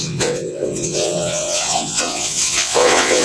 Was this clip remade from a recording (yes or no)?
yes